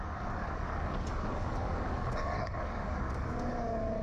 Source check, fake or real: fake